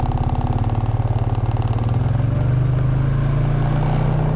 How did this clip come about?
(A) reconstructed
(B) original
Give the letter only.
B